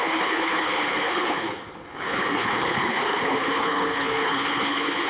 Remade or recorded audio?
remade